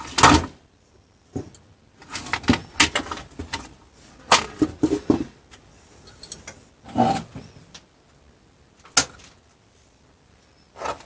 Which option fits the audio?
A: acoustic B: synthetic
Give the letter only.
A